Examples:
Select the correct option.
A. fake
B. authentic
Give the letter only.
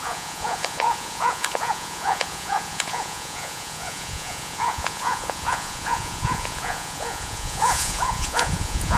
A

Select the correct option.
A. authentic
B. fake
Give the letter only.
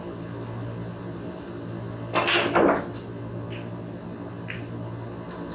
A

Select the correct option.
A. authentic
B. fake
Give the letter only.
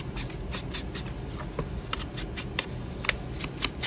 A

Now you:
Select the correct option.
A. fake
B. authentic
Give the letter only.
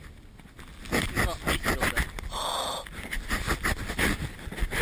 B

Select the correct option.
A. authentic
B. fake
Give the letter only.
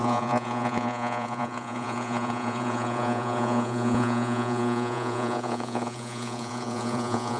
B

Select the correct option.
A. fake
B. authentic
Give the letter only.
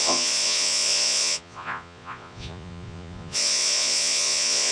A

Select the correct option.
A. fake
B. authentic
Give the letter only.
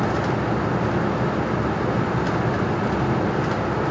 B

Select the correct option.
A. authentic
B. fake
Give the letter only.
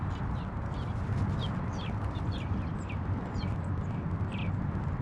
A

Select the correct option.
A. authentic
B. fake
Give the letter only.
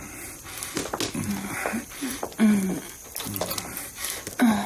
A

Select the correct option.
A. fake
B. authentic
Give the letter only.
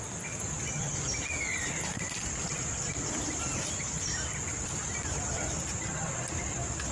B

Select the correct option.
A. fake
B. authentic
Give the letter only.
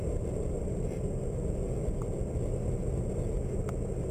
B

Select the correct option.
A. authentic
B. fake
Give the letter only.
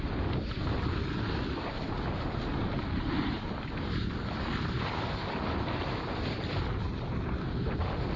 A